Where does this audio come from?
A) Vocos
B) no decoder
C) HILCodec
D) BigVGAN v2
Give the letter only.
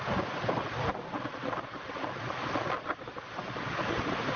B